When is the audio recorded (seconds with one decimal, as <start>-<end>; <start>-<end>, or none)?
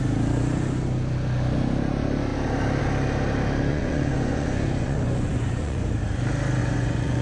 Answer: 0.0-3.7; 5.9-6.6